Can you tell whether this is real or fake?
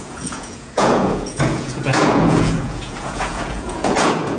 fake